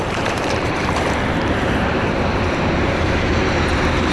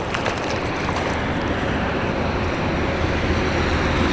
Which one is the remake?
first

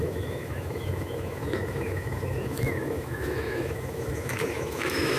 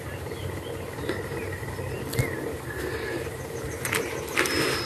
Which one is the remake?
first